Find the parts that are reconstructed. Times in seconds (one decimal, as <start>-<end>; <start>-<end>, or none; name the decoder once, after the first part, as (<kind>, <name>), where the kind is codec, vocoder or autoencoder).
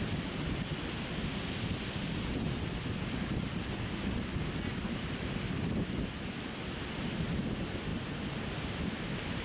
none